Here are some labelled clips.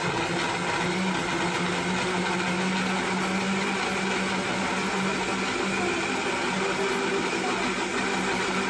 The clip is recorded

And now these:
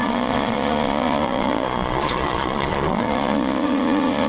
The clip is remade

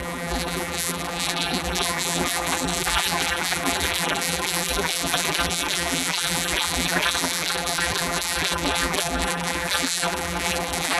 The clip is remade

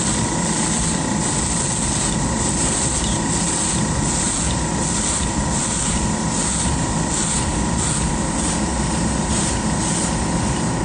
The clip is recorded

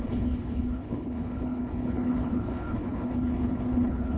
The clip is remade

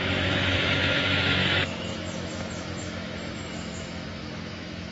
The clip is remade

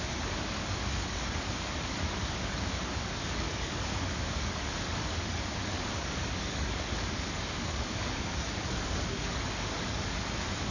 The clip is remade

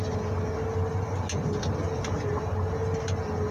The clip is recorded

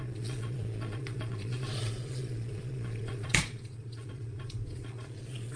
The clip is remade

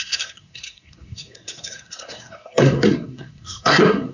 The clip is remade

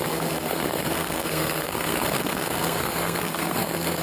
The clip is remade